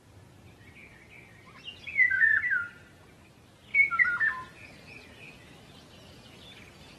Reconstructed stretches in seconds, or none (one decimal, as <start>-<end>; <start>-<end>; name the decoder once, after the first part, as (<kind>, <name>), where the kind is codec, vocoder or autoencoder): 1.7-2.4 (vocoder, Vocos)